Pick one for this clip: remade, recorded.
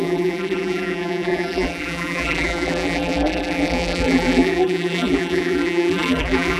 remade